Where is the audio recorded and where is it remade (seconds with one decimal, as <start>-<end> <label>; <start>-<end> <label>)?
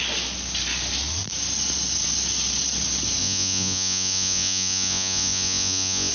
0.0-3.2 recorded; 3.2-6.1 remade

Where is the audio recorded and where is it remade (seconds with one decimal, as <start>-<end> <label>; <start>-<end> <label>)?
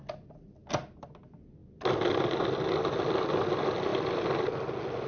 0.0-5.1 recorded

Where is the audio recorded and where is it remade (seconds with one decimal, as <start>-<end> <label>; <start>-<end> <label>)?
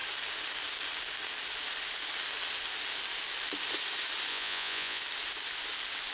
0.0-4.3 recorded; 4.3-5.0 remade; 5.0-6.1 recorded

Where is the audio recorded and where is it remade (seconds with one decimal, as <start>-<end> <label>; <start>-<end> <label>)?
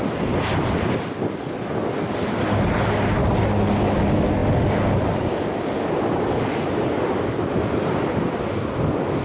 0.0-9.2 recorded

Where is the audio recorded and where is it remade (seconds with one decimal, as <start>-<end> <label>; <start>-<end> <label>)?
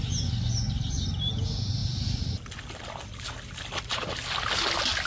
0.0-5.1 recorded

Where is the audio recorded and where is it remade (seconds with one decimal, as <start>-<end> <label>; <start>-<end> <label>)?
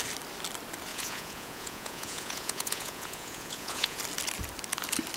0.0-0.9 recorded; 0.9-4.0 remade; 4.0-5.2 recorded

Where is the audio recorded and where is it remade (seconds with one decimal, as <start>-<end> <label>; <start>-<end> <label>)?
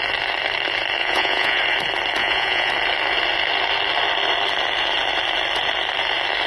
0.0-1.0 recorded; 1.0-1.6 remade; 1.6-2.2 recorded; 2.2-2.7 remade; 2.7-6.5 recorded